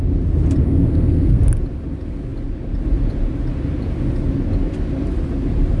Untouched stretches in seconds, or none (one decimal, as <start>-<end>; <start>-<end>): 0.0-0.6; 1.4-5.8